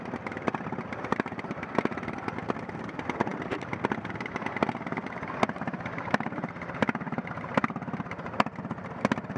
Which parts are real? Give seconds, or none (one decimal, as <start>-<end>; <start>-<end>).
0.0-9.4